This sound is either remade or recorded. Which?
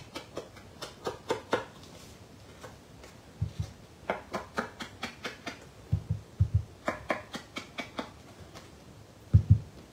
recorded